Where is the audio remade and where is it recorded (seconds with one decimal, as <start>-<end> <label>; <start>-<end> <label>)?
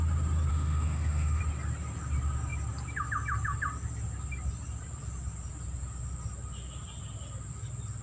0.0-0.5 recorded; 0.5-1.4 remade; 1.4-8.0 recorded